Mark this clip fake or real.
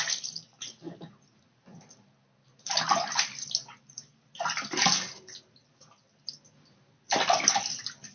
real